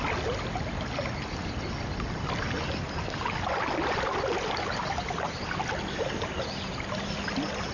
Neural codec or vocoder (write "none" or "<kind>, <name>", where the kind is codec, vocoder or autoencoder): none